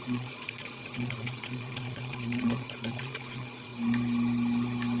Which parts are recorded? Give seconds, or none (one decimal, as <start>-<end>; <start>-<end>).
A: 3.7-5.0